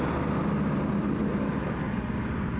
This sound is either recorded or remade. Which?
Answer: recorded